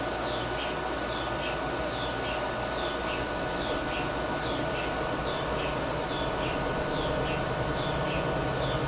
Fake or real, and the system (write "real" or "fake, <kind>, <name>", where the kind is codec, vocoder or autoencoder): real